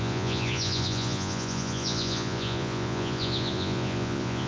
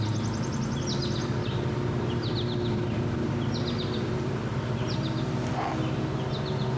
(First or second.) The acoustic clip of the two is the second